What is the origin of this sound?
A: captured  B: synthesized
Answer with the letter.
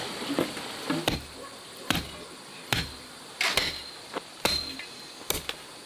A